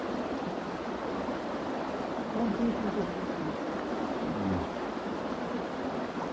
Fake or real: real